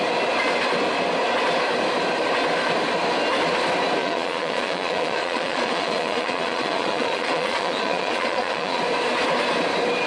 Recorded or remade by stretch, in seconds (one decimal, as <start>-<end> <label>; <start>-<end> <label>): 0.0-4.0 recorded; 4.0-8.8 remade; 8.8-10.1 recorded